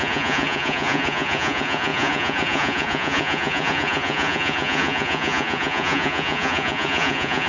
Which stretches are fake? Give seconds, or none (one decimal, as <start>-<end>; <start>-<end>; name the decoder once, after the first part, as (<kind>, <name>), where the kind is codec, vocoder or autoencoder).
0.0-7.5 (vocoder, Vocos)